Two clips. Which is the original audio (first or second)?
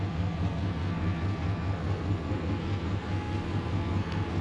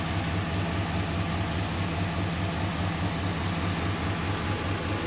second